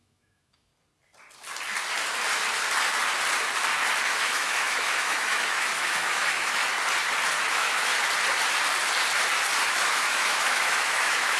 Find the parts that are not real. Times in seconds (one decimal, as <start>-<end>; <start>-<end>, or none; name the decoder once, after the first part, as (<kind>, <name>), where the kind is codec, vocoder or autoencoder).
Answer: 0.0-0.7 (autoencoder, DAC-VAE); 4.1-6.6; 7.5-7.9; 9.7-11.4